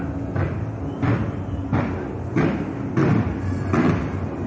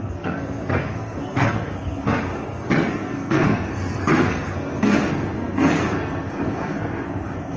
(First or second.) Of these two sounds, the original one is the first